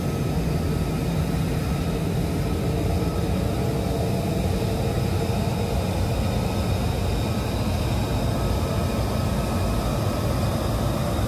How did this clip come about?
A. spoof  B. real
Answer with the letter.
B